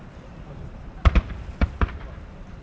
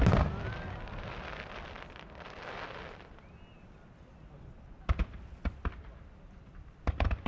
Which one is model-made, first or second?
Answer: first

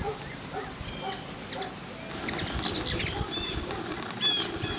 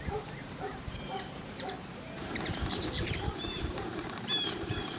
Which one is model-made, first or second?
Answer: second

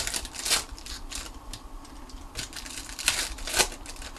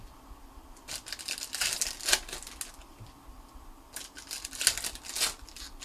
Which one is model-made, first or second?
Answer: first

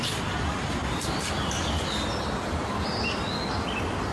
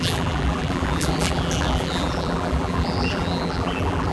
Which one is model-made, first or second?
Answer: second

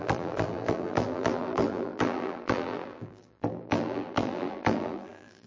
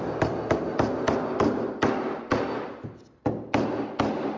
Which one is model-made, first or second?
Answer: first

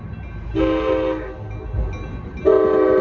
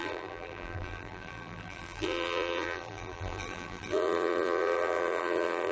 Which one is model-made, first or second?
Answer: second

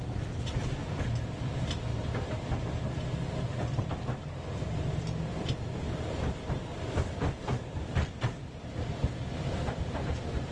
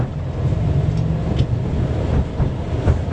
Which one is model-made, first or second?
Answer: first